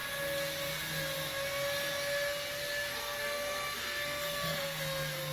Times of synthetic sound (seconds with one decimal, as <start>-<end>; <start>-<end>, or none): 2.9-5.3